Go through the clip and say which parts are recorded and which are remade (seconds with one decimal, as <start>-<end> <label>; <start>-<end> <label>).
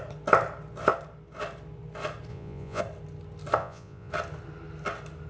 0.0-2.3 recorded; 2.3-2.8 remade; 2.8-3.6 recorded; 3.6-4.1 remade; 4.1-5.3 recorded